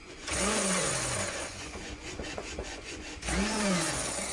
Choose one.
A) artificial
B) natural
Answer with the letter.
A